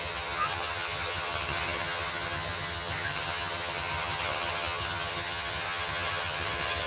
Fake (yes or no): yes